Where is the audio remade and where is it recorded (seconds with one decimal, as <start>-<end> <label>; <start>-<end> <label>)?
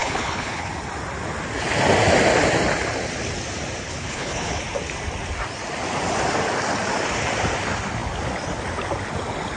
0.0-0.7 remade; 0.7-3.9 recorded; 3.9-4.6 remade; 4.6-9.6 recorded